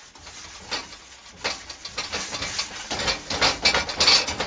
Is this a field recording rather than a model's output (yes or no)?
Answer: yes